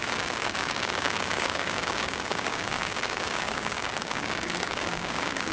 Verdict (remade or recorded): remade